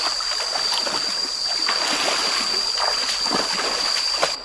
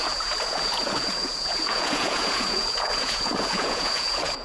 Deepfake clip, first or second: second